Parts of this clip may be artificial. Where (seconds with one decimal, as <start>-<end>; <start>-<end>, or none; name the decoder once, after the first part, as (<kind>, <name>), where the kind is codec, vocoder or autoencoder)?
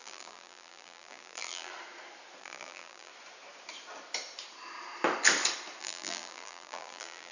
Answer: 0.0-1.7 (vocoder, BigVGAN v2); 2.4-3.1; 5.8-7.3